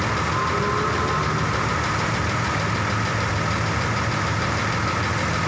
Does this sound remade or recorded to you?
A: recorded